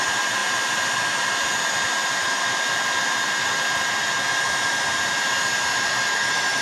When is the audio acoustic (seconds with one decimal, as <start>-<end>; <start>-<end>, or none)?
0.0-5.7